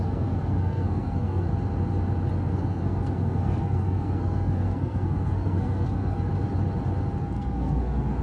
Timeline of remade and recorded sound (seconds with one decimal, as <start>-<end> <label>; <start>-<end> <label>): 0.0-1.5 remade; 1.5-2.3 recorded; 2.3-6.3 remade; 6.3-7.2 recorded; 7.2-8.2 remade